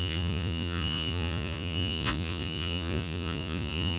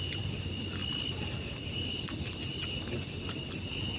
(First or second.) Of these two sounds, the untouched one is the second